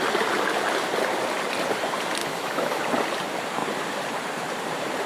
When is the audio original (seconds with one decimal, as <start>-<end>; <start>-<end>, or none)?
0.0-2.2; 2.8-5.1